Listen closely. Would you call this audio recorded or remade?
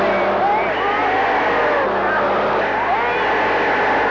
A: recorded